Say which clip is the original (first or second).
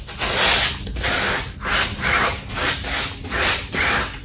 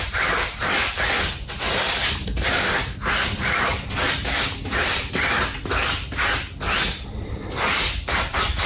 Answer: first